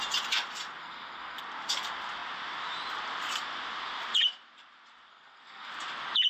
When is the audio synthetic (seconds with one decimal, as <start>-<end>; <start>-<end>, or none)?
0.8-1.4; 5.1-5.7